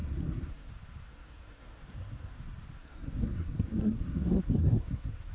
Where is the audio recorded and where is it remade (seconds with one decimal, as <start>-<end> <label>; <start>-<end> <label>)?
0.0-0.7 remade; 0.7-1.1 recorded; 1.1-2.4 remade; 2.4-2.8 recorded; 2.8-5.3 remade